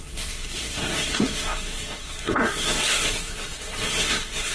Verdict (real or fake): fake